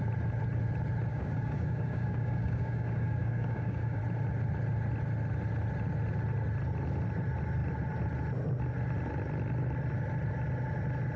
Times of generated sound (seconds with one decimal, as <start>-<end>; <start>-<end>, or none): 1.1-4.0